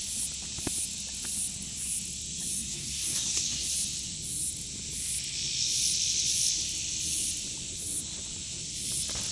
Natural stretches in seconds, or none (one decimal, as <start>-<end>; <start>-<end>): 0.0-2.5; 3.7-9.3